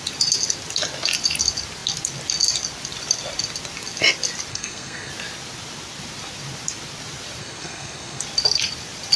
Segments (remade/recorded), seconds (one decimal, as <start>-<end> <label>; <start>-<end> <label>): 0.0-4.5 recorded; 4.5-5.1 remade; 5.1-7.4 recorded; 7.4-8.2 remade; 8.2-9.2 recorded